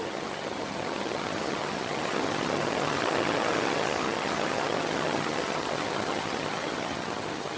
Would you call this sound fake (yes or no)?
yes